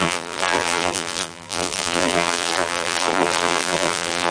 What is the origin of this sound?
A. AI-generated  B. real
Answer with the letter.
A